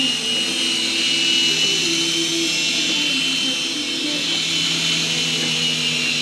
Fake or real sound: real